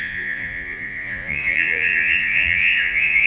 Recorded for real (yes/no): no